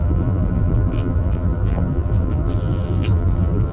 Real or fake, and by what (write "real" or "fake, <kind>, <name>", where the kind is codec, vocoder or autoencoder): fake, vocoder, BigVGAN v2